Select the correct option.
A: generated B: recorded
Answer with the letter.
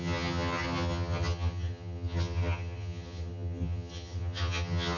A